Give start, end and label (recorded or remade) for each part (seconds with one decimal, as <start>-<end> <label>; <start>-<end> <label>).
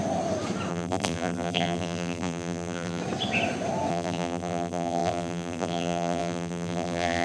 0.0-0.7 recorded; 0.7-3.0 remade; 3.0-3.9 recorded; 3.9-7.2 remade